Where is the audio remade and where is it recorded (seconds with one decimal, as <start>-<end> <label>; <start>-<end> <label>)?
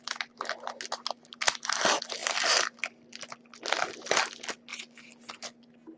0.0-6.0 recorded